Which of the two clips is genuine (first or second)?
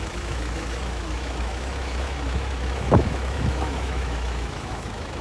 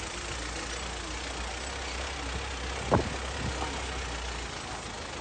second